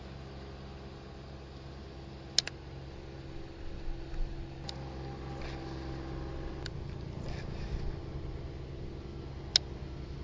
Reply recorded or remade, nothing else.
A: recorded